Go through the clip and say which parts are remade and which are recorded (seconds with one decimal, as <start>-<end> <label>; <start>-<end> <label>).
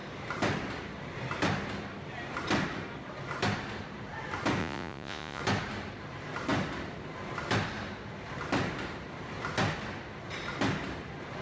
0.0-4.6 recorded; 4.6-5.4 remade; 5.4-11.4 recorded